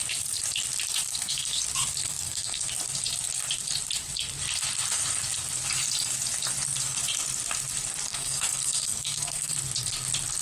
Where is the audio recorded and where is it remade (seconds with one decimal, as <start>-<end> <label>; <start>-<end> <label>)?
0.0-1.1 recorded; 1.1-1.6 remade; 1.6-2.1 recorded; 2.1-2.7 remade; 2.7-8.1 recorded; 8.1-9.5 remade; 9.5-10.4 recorded